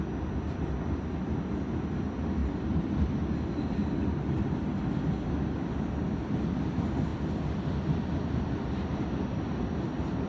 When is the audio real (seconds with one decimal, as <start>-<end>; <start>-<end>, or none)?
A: 0.0-2.4; 3.3-7.1